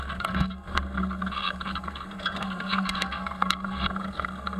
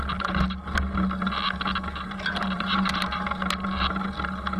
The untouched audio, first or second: second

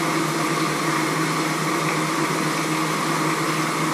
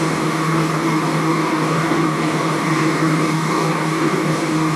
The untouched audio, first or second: first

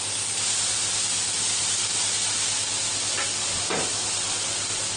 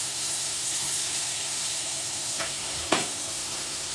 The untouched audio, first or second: first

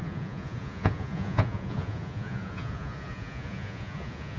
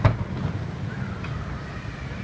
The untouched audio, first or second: second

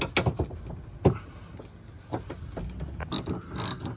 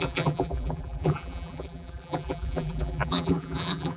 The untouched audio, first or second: first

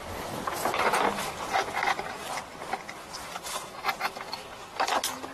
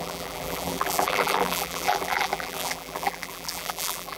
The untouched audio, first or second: first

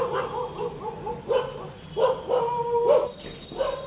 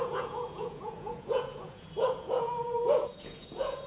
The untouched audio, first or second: first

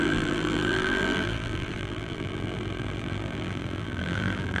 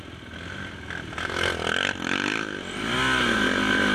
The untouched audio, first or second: second